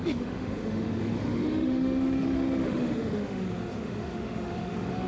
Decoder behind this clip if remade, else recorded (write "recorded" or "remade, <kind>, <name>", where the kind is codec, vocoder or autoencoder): remade, autoencoder, DAC-VAE